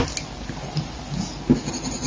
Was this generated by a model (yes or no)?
no